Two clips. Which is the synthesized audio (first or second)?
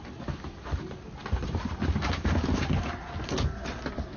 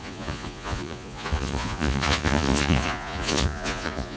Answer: second